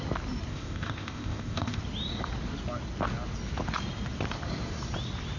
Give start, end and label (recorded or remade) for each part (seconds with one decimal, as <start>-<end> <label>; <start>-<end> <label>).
0.0-0.5 recorded; 0.5-1.8 remade; 1.8-5.4 recorded

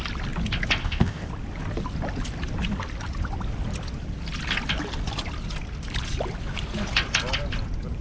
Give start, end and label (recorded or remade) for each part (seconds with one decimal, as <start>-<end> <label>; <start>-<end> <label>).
0.0-0.8 recorded; 0.8-1.3 remade; 1.3-8.0 recorded

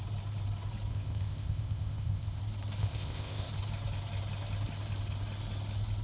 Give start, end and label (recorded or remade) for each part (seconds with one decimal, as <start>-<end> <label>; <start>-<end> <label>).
0.0-0.9 recorded; 0.9-2.4 remade; 2.4-2.8 recorded; 2.8-3.5 remade; 3.5-6.0 recorded